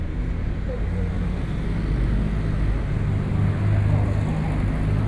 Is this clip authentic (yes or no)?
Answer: yes